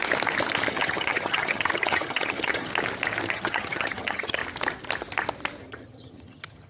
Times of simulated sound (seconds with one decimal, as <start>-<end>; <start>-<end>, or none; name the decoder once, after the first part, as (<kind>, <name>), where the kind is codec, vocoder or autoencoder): 0.7-2.7 (vocoder, HiFi-GAN); 3.3-4.4; 5.7-6.7